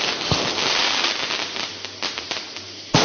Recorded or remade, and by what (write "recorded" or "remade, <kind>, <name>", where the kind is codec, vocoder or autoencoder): recorded